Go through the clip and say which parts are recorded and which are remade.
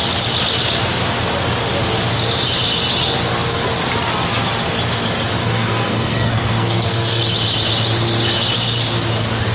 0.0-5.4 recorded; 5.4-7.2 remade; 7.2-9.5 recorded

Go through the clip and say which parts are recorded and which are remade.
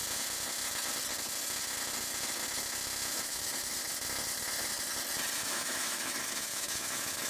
0.0-3.2 recorded; 3.2-3.8 remade; 3.8-5.4 recorded; 5.4-7.3 remade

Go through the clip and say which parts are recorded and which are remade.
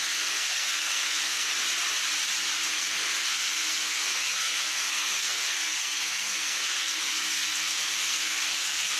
0.0-1.5 remade; 1.5-2.7 recorded; 2.7-9.0 remade